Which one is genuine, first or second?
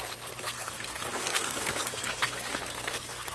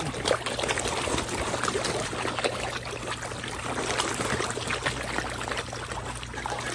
second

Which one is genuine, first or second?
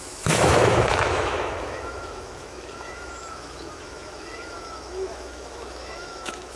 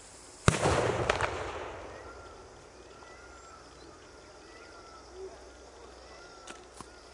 second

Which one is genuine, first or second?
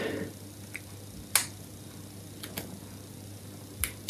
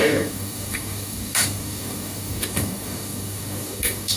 first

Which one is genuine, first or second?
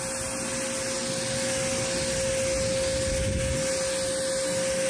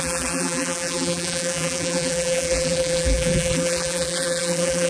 first